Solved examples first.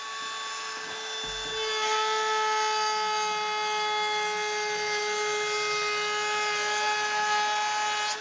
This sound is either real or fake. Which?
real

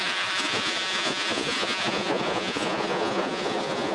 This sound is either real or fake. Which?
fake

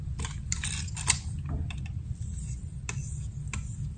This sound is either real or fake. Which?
real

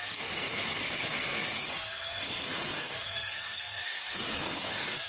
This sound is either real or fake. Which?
fake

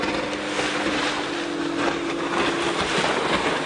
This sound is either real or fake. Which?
real